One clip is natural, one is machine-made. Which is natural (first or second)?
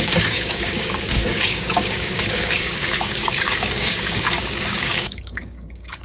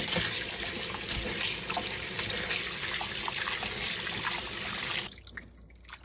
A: second